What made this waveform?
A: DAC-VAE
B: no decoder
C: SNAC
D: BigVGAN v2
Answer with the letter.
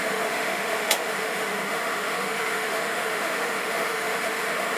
A